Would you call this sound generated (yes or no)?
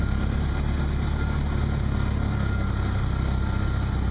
no